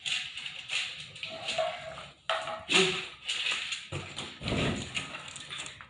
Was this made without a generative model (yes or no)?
yes